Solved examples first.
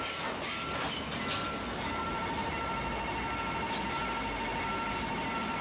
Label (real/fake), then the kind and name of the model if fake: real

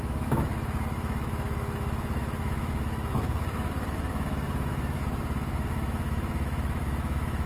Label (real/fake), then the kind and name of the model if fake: fake, autoencoder, DAC-VAE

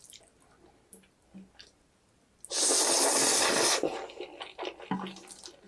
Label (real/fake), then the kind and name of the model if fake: real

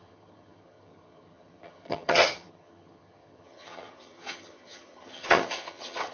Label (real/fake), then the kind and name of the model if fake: fake, vocoder, HiFi-GAN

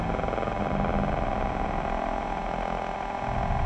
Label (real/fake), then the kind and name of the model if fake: real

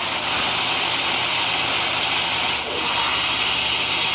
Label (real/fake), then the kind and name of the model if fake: real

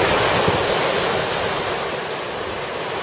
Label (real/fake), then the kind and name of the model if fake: real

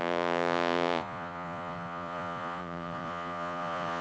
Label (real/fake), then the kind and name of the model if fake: fake, vocoder, Vocos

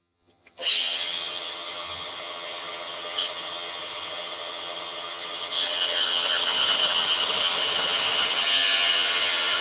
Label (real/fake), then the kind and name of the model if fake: fake, vocoder, HiFi-GAN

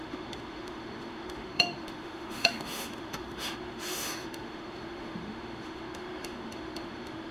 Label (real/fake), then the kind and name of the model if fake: fake, autoencoder, DAC-VAE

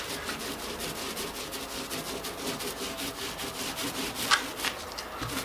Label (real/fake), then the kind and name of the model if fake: real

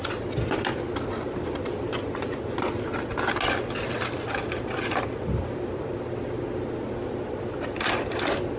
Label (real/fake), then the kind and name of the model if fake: real